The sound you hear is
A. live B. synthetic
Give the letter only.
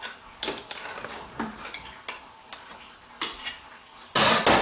A